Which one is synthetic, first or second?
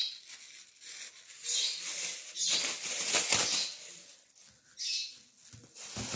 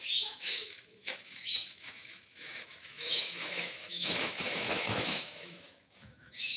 second